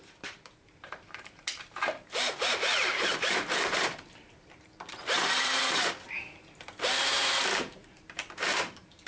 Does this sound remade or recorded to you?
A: remade